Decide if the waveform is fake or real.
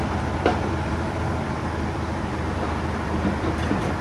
fake